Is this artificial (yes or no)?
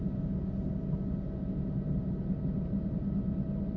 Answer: no